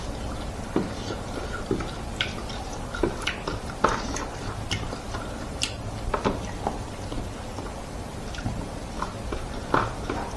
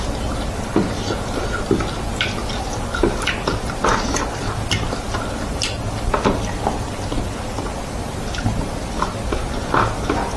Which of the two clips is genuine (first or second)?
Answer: second